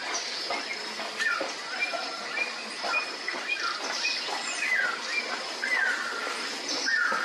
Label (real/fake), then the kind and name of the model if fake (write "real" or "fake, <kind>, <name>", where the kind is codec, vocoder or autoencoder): real